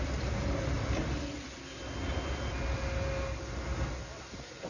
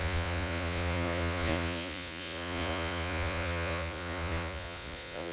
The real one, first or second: first